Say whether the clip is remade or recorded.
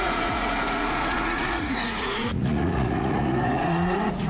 remade